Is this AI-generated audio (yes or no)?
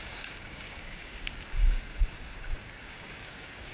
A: yes